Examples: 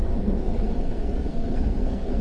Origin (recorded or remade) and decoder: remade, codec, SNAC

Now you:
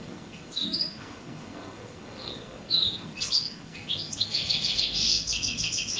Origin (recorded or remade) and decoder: remade, codec, SNAC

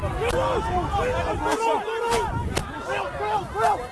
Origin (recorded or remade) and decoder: recorded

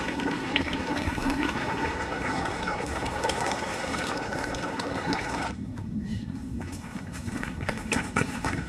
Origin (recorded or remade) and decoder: remade, codec, SNAC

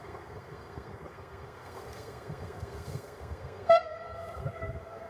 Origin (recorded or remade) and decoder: remade, codec, SNAC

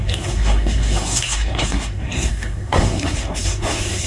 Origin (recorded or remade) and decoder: remade, codec, SNAC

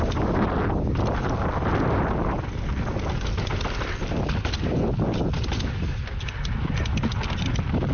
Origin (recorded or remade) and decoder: recorded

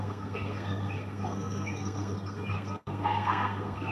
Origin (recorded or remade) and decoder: remade, codec, SNAC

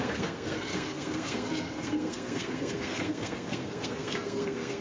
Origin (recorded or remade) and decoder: remade, codec, SNAC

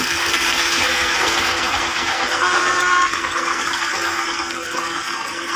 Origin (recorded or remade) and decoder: remade, codec, SNAC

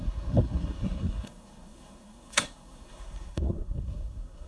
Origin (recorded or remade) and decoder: remade, codec, SNAC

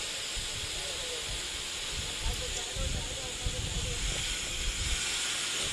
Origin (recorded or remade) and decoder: recorded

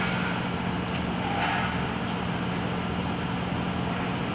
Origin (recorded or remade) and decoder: recorded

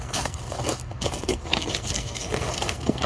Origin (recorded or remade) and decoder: remade, codec, SNAC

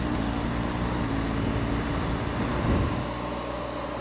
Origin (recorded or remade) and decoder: recorded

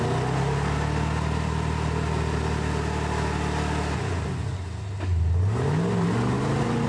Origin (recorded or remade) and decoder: recorded